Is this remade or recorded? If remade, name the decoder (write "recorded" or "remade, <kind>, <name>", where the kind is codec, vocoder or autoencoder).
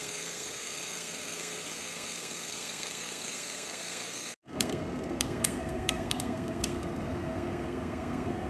remade, codec, SNAC